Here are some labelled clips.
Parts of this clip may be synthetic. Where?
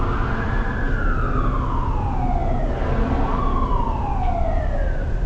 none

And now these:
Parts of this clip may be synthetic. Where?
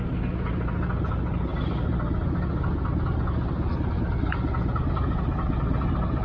none